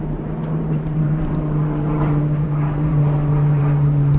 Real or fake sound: fake